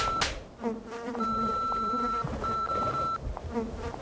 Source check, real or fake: real